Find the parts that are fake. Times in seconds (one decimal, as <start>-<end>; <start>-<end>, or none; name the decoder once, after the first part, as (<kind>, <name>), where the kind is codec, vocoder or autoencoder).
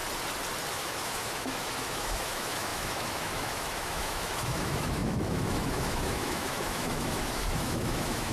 0.7-8.3 (autoencoder, DAC-VAE)